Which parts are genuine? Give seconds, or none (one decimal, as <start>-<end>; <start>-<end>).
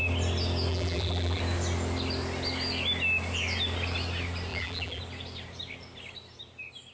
0.0-0.7; 1.4-4.5; 5.0-6.9